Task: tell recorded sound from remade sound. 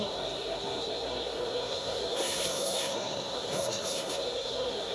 remade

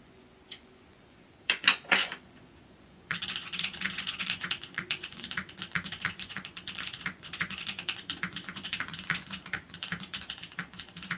remade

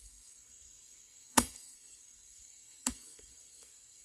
remade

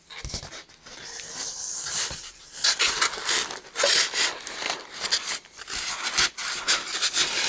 recorded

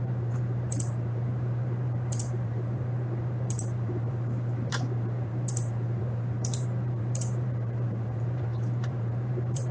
remade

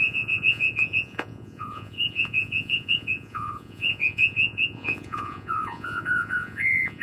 remade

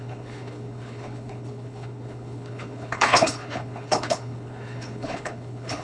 remade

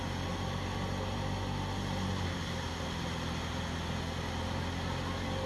recorded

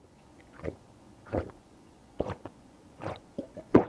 remade